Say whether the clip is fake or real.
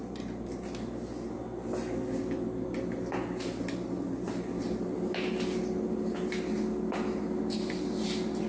real